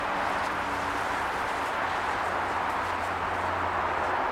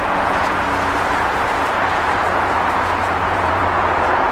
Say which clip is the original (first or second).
first